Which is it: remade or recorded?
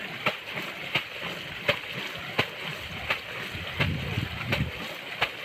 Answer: recorded